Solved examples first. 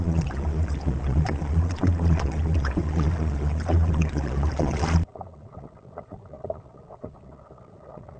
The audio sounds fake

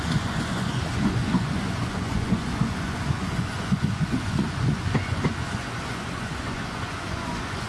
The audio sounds fake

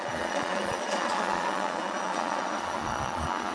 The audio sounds fake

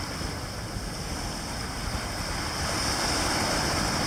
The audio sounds real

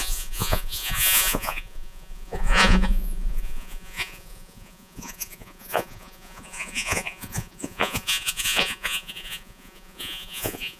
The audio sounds fake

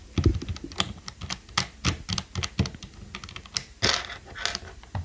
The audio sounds real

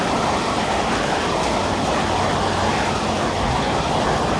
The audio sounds real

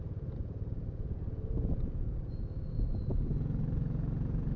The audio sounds fake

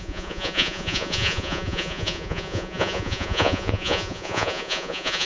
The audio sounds fake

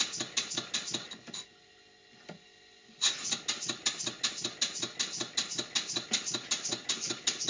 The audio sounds real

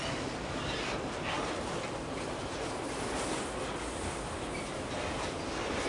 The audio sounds real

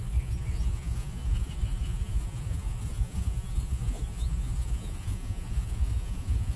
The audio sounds fake